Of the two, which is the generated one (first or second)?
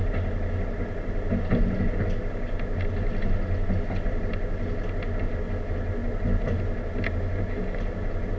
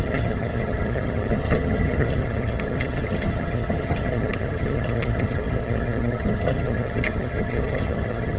second